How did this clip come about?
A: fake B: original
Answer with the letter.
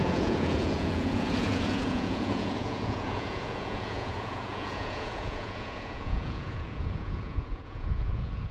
A